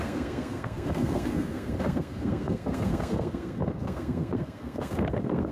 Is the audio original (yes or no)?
no